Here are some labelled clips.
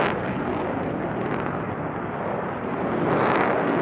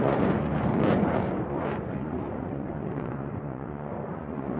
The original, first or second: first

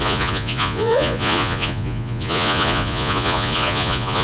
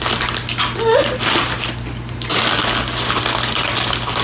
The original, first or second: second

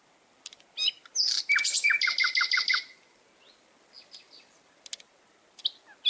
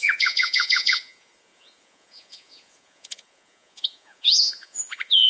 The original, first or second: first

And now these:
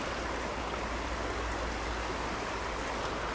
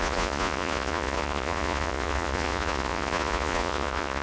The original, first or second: first